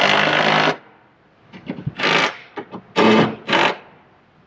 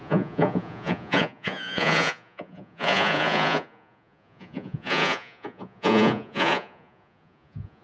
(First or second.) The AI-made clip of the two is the second